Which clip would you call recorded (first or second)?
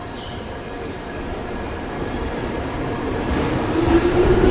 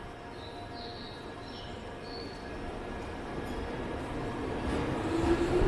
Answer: second